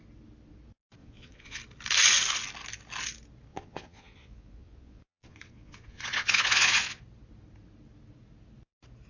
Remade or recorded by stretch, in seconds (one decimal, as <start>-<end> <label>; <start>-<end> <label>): 0.0-1.0 recorded; 1.0-1.6 remade; 1.6-3.5 recorded; 3.5-7.0 remade; 7.0-9.1 recorded